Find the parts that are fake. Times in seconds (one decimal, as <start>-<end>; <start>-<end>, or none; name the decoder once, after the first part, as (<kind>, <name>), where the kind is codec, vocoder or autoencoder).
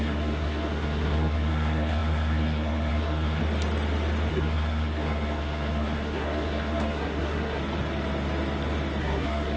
0.0-3.4 (codec, SNAC); 4.3-7.6; 9.0-9.6